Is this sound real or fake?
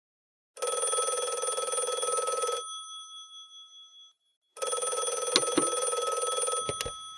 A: real